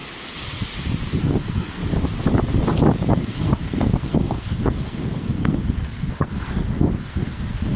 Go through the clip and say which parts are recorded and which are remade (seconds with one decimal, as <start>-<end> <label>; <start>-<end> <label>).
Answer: 0.0-1.2 recorded; 1.2-1.8 remade; 1.8-3.1 recorded; 3.1-7.8 remade